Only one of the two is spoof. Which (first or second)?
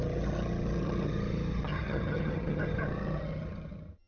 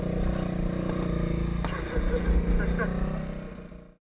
first